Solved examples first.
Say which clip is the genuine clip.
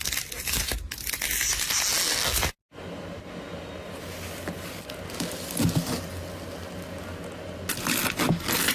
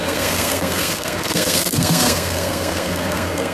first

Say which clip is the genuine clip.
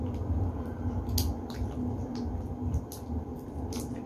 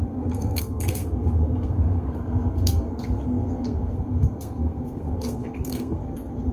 first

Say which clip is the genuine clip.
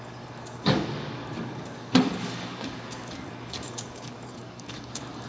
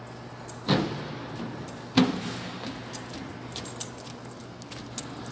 second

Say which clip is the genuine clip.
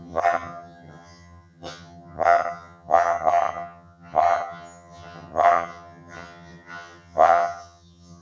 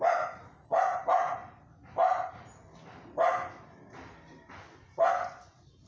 second